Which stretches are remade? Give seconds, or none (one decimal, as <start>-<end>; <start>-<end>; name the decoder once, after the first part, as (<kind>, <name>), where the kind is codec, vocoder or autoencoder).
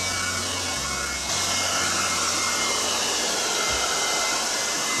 none